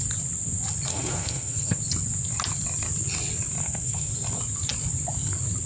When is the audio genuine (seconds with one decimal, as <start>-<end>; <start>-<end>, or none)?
0.0-0.9; 1.8-3.6; 4.1-5.7